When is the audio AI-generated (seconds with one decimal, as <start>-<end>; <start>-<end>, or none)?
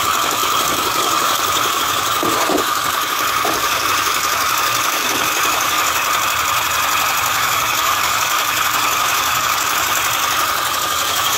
0.0-6.0; 7.3-10.0; 10.7-11.4